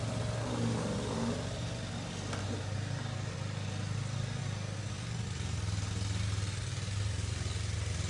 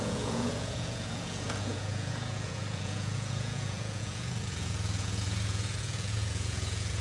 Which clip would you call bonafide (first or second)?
first